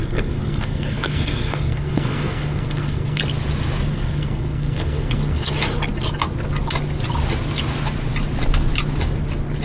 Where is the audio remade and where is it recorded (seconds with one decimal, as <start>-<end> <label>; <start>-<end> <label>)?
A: 0.0-3.2 remade; 3.2-3.9 recorded; 3.9-5.5 remade; 5.5-9.6 recorded